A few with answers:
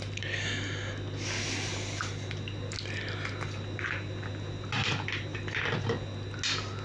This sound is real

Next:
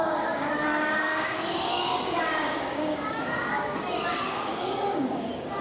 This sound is fake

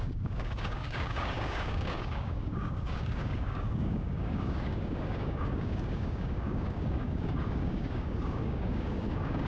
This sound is fake